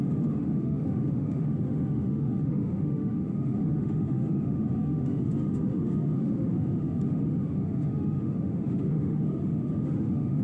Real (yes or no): no